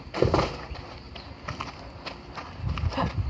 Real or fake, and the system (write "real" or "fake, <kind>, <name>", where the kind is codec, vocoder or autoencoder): real